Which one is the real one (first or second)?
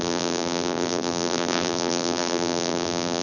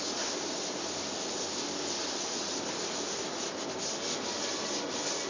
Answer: second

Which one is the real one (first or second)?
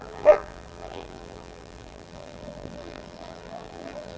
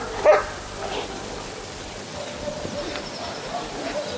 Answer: second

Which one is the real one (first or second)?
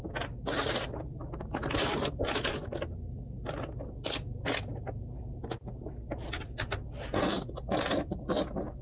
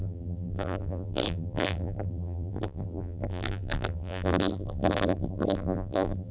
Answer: first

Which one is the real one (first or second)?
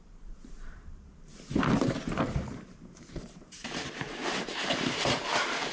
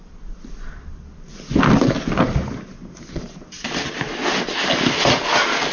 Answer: second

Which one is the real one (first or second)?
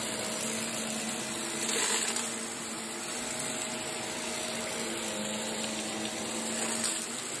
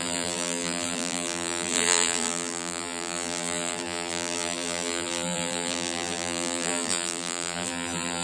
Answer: first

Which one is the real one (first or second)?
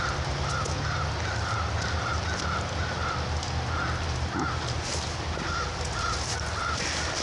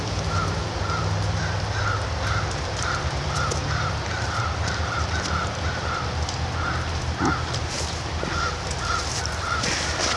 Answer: first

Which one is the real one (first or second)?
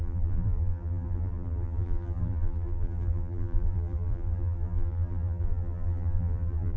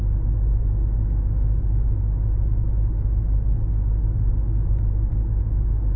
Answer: second